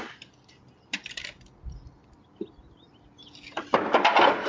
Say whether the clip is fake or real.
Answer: real